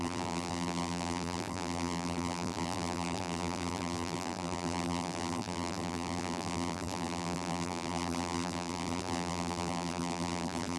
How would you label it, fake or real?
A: fake